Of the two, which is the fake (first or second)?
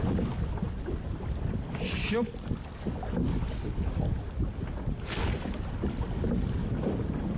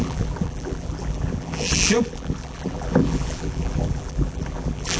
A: second